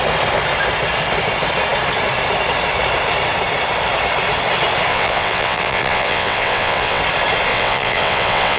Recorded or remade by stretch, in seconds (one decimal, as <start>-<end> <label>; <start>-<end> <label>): 0.0-4.9 recorded; 4.9-7.0 remade; 7.0-7.5 recorded; 7.5-8.6 remade